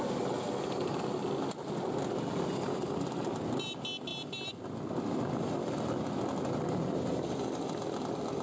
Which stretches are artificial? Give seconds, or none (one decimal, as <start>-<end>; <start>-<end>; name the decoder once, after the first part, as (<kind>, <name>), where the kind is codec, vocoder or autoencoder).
none